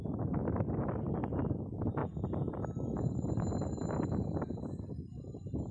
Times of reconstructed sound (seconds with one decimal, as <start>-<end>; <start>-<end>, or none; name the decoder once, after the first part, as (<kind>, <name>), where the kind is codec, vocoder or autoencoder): 2.0-4.8 (vocoder, BigVGAN v2)